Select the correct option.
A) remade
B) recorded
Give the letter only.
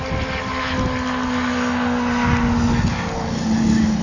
B